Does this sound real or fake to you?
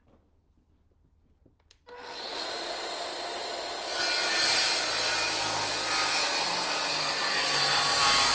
real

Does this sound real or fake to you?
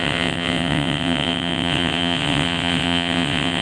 fake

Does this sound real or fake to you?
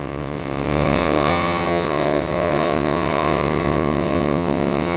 fake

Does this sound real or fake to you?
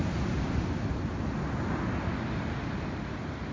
real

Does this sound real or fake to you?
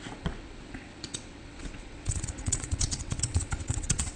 fake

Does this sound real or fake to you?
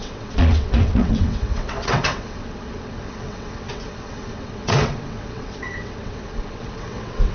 fake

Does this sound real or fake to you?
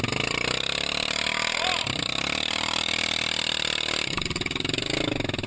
real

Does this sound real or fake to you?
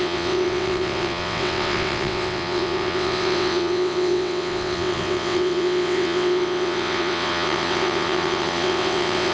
fake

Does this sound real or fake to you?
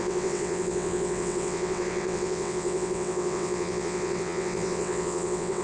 fake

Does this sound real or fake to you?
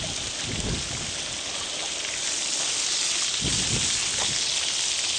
real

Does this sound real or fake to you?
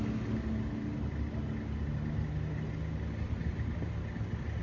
real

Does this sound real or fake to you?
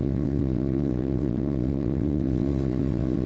fake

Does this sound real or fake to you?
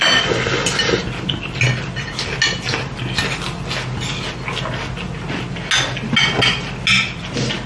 real